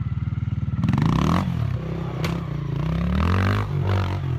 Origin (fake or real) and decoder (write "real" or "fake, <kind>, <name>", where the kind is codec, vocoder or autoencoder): real